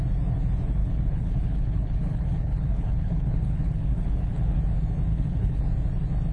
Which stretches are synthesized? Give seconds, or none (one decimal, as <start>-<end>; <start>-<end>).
0.8-4.6; 5.1-5.6